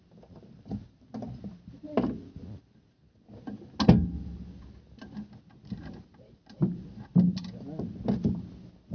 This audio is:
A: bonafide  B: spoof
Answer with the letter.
A